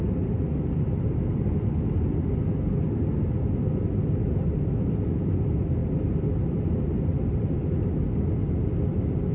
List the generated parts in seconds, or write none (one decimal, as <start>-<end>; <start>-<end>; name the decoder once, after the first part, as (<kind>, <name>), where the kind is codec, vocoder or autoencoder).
none